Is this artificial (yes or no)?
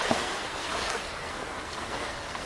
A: yes